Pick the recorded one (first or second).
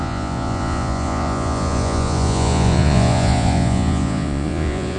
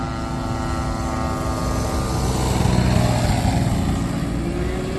second